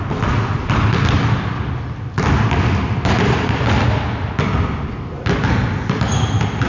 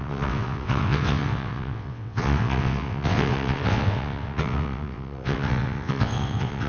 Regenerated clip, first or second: second